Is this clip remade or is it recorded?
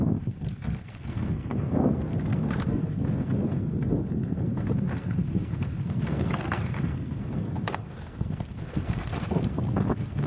remade